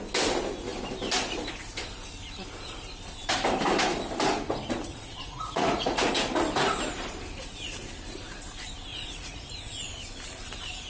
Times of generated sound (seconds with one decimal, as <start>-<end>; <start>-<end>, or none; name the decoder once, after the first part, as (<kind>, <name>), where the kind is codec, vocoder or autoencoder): 4.9-6.1 (vocoder, Vocos); 8.9-10.0